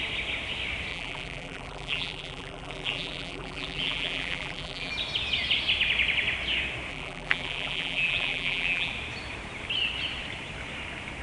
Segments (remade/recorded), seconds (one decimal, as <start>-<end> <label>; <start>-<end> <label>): 0.0-0.9 recorded; 0.9-4.9 remade; 4.9-6.9 recorded; 6.9-8.9 remade; 8.9-11.2 recorded